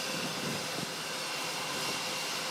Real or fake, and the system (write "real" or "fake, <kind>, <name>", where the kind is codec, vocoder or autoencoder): real